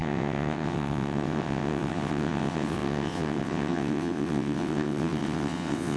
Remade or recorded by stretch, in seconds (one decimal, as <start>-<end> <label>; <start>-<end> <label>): 0.0-6.0 remade